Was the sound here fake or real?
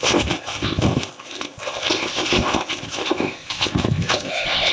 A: fake